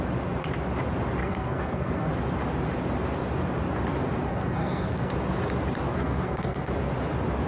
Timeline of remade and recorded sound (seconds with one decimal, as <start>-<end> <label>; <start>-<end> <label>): 0.0-1.2 recorded; 1.2-2.1 remade; 2.1-4.3 recorded; 4.3-5.1 remade; 5.1-5.9 recorded; 5.9-6.7 remade; 6.7-7.5 recorded